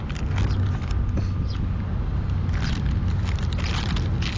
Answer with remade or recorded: recorded